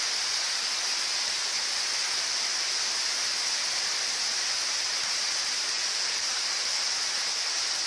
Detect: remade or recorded recorded